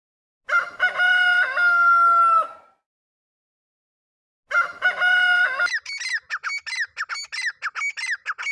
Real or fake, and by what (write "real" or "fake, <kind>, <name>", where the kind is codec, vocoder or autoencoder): real